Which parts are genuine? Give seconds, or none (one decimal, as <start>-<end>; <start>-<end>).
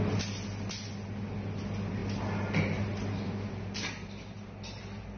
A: 0.0-5.2